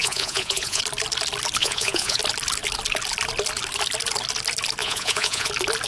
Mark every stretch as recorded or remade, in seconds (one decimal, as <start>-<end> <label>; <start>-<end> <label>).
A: 0.0-0.8 remade; 0.8-1.6 recorded; 1.6-2.2 remade; 2.2-4.8 recorded; 4.8-5.5 remade; 5.5-5.9 recorded